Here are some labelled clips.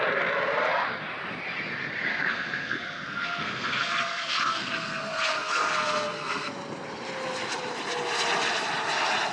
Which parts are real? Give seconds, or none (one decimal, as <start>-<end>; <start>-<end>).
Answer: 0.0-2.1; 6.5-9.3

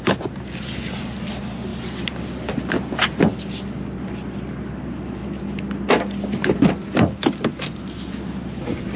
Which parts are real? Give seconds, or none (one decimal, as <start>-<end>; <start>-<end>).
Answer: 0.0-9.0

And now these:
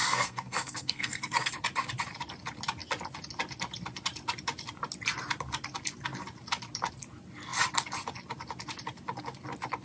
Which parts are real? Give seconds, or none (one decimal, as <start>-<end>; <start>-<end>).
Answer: 1.5-9.8